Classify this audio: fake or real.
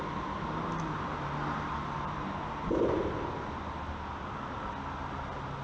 real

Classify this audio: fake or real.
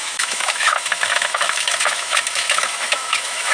fake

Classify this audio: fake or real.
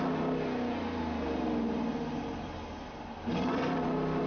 real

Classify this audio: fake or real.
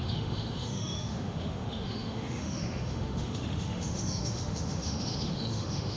fake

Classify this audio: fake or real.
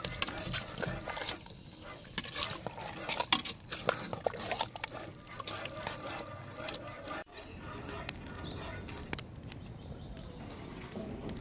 real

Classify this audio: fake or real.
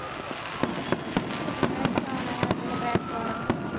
real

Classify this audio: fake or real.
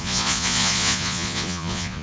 fake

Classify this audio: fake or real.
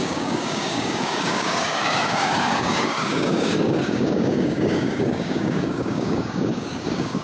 fake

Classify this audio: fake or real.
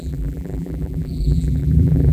fake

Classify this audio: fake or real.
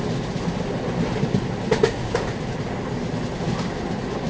real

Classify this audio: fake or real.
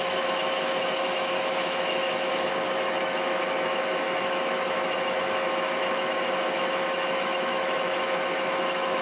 fake